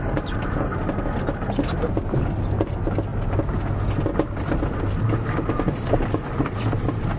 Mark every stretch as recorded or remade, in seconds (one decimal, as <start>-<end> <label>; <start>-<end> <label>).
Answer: 0.0-7.2 recorded